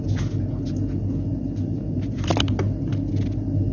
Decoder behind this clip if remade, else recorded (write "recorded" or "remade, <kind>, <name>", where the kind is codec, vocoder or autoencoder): recorded